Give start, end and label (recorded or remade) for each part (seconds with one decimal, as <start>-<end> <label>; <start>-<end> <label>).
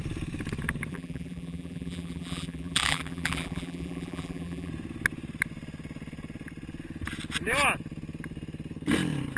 0.0-0.9 recorded; 0.9-4.7 remade; 4.7-9.4 recorded